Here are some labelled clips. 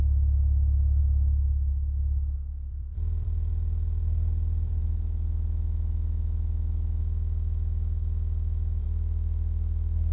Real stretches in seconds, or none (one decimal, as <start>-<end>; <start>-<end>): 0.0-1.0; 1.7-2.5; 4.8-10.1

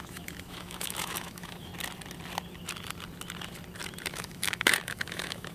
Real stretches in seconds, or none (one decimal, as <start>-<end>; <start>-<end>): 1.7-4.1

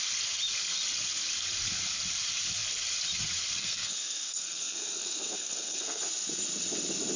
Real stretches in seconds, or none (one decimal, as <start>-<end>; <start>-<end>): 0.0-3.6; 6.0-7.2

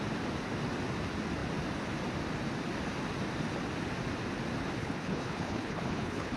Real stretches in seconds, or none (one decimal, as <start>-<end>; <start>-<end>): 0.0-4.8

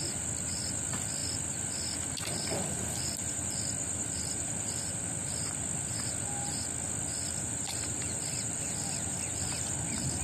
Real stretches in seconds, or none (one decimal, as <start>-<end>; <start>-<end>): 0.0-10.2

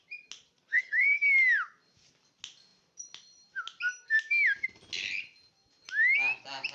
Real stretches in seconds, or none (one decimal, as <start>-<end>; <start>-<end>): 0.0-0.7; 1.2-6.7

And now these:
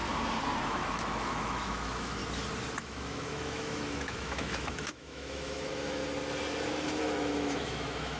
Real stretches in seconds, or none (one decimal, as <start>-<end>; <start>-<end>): 0.0-0.6; 2.2-2.8; 6.0-7.0